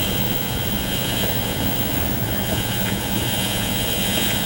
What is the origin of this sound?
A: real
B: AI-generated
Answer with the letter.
B